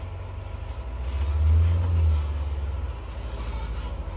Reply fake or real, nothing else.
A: real